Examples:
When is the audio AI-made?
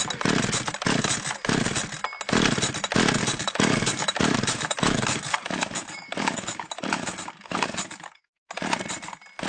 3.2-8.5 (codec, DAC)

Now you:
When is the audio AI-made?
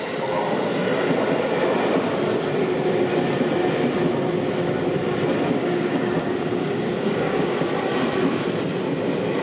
5.6-7.7 (codec, DAC)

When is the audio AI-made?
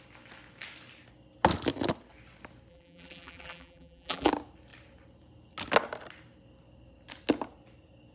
2.7-4.3 (vocoder, BigVGAN v2)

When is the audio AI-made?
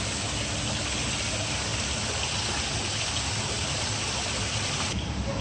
none